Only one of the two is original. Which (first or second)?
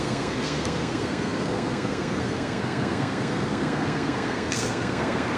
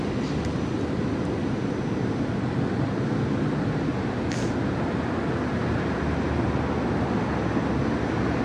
second